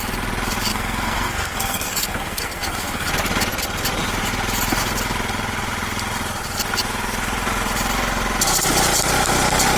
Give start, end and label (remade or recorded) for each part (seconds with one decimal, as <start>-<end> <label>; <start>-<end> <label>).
0.0-0.7 recorded; 0.7-3.1 remade; 3.1-9.8 recorded